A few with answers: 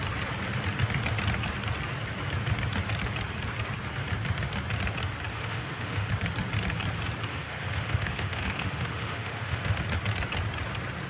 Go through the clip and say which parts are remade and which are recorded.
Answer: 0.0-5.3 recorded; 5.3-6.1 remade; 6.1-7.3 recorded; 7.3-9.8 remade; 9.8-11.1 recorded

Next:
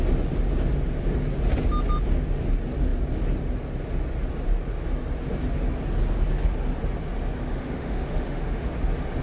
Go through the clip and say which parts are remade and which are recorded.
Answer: 0.0-7.5 recorded; 7.5-8.7 remade; 8.7-9.2 recorded

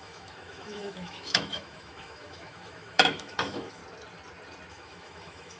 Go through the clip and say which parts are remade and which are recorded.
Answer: 0.0-3.8 remade; 3.8-4.7 recorded; 4.7-5.6 remade

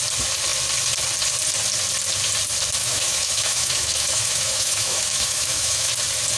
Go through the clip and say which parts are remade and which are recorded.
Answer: 0.0-2.8 recorded; 2.8-5.9 remade; 5.9-6.4 recorded

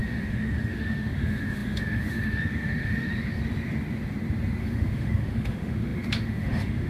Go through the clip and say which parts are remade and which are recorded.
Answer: 0.0-3.4 remade; 3.4-4.6 recorded; 4.6-6.9 remade